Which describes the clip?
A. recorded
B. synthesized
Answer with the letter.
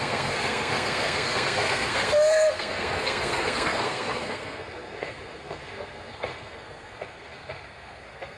B